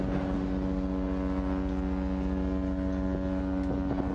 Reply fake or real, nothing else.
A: real